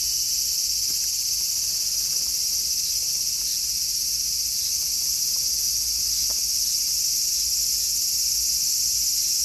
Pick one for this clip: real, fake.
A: real